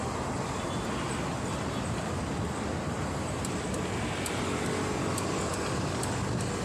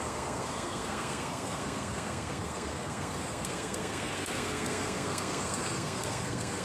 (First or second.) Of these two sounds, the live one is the first